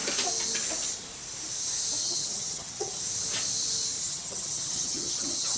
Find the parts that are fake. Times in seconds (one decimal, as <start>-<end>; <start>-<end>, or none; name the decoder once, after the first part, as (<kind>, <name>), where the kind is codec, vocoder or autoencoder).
2.0-3.0 (vocoder, HiFi-GAN); 4.0-5.6